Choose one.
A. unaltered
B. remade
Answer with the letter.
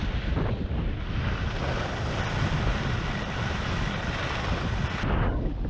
A